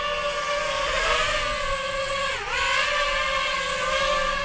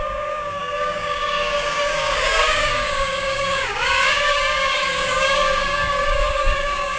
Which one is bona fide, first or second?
first